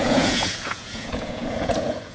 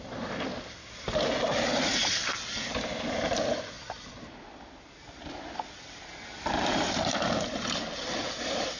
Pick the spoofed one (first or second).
first